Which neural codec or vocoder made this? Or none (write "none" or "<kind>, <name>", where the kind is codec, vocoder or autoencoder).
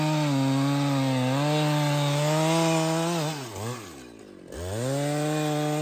none